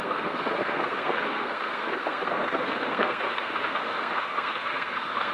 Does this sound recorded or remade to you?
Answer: remade